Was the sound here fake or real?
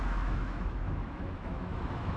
fake